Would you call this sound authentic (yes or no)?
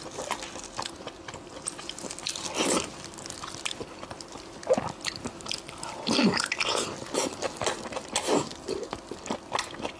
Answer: yes